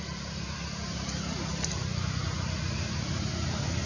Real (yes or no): yes